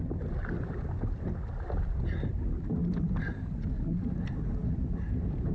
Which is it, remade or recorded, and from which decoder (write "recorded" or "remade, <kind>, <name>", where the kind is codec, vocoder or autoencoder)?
recorded